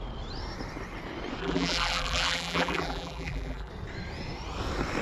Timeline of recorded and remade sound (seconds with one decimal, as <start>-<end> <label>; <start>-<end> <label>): 0.0-1.4 recorded; 1.4-3.7 remade; 3.7-5.0 recorded